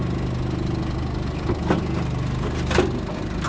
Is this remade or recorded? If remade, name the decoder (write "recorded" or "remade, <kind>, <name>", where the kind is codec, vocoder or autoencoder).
recorded